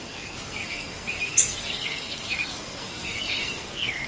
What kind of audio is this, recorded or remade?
remade